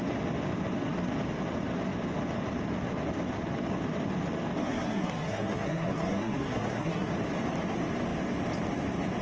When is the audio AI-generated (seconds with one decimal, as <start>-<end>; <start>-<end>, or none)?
4.6-7.1